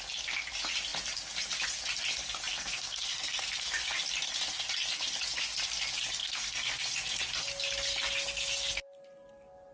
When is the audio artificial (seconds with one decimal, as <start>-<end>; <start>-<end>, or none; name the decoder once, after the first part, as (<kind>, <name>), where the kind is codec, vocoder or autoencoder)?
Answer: 2.5-3.7 (codec, SNAC); 6.2-6.8